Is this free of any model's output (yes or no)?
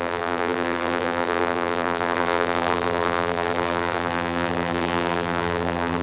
no